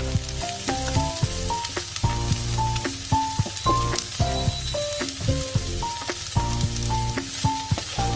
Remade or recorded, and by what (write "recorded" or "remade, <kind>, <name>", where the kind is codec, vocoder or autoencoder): recorded